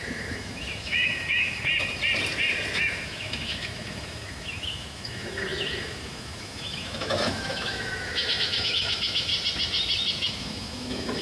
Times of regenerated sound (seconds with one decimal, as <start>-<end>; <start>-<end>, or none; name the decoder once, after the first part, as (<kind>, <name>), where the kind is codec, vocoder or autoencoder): 0.0-1.7 (autoencoder, DAC-VAE); 2.8-9.3; 10.2-11.2